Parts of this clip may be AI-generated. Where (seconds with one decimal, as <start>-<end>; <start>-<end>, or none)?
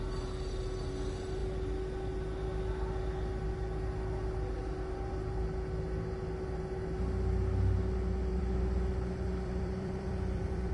8.3-10.7